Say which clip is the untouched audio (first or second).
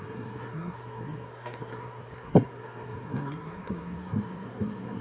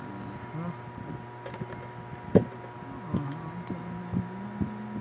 second